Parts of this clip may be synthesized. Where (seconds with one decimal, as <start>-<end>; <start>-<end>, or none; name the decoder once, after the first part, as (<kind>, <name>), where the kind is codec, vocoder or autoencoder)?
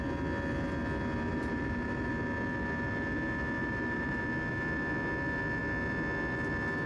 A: 1.3-2.1 (vocoder, BigVGAN v2); 3.6-4.2